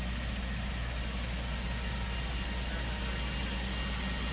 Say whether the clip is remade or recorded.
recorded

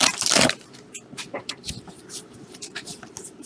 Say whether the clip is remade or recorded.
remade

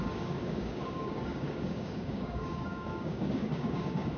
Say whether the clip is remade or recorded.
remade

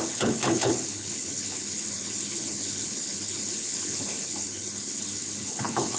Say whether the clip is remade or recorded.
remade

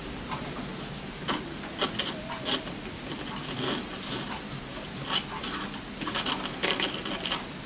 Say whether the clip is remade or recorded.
recorded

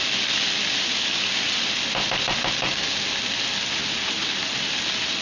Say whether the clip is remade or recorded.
recorded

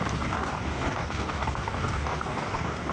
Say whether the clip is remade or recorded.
remade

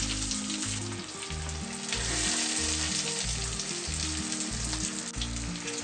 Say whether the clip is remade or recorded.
recorded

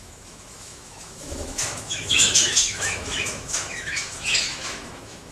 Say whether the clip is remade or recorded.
remade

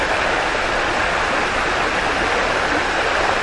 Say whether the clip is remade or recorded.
recorded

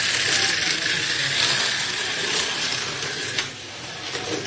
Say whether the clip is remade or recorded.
recorded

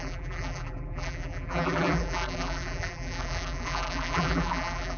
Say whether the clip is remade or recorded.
remade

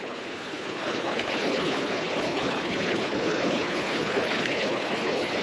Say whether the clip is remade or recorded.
remade